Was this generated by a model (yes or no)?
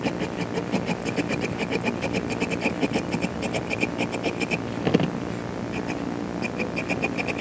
no